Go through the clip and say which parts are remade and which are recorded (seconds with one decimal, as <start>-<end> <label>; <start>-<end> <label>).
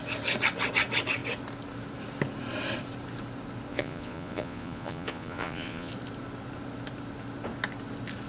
0.0-3.7 recorded; 3.7-5.9 remade; 5.9-8.3 recorded